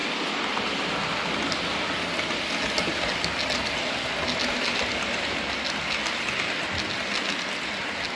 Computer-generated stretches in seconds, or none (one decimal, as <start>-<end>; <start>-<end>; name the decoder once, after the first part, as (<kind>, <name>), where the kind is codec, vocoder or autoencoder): none